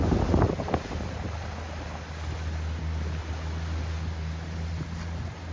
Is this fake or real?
real